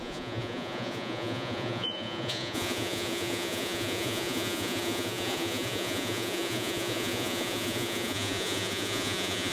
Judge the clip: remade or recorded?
remade